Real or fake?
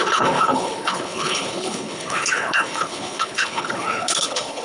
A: fake